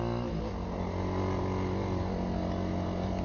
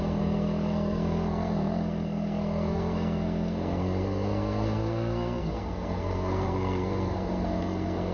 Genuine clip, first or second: first